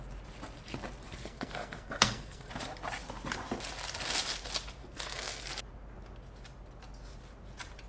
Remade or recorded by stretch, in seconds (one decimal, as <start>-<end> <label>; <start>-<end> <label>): 0.0-1.2 recorded; 1.2-2.5 remade; 2.5-4.8 recorded; 4.8-5.5 remade; 5.5-7.9 recorded